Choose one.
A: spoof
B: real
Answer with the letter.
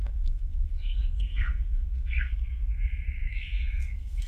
A